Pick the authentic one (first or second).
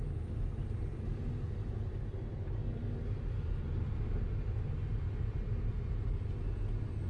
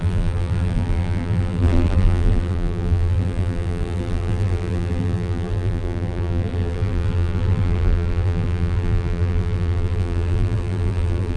first